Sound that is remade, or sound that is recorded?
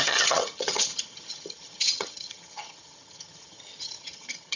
remade